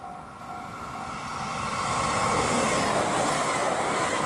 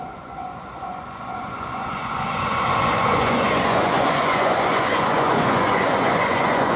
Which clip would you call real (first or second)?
first